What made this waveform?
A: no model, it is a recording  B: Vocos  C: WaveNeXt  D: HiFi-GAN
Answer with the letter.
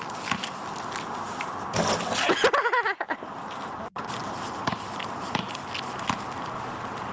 A